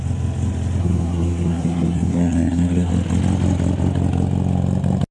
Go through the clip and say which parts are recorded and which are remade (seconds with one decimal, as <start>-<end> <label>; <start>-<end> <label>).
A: 0.0-0.8 recorded; 0.8-2.9 remade; 2.9-5.1 recorded